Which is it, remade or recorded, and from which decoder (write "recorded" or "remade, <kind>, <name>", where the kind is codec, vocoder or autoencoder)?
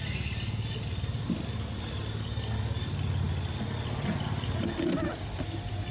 recorded